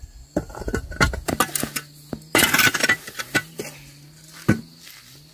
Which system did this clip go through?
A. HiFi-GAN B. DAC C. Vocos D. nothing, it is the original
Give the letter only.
D